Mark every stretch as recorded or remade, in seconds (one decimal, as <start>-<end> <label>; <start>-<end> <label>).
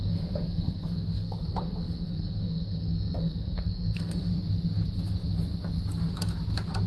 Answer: 0.0-4.3 remade; 4.3-6.9 recorded